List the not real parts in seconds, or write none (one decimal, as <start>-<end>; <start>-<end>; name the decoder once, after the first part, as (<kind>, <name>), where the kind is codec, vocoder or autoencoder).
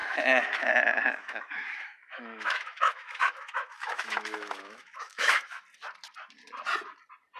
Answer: 0.0-0.7 (autoencoder, DAC-VAE); 1.2-5.6